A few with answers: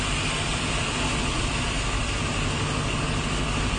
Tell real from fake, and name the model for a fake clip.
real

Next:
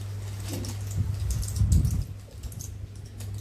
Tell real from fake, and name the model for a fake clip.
real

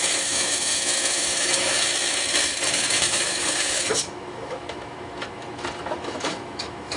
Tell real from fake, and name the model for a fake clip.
fake, autoencoder, DAC-VAE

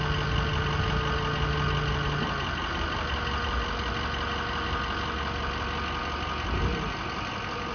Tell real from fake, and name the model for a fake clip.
real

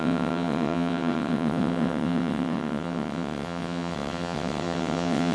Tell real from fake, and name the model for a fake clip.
fake, vocoder, WaveNeXt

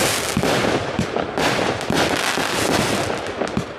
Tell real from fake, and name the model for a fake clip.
real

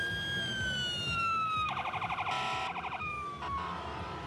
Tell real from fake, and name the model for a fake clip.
real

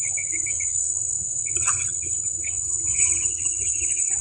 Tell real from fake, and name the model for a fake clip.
fake, vocoder, HiFi-GAN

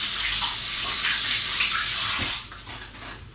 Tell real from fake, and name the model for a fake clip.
real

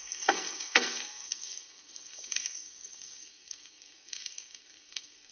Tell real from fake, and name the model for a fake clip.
fake, codec, SNAC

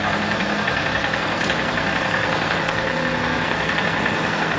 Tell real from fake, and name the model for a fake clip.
fake, codec, SNAC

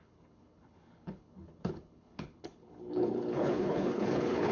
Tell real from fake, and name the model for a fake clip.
fake, codec, HILCodec